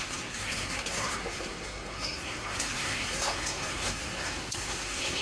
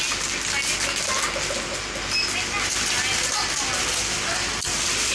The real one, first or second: second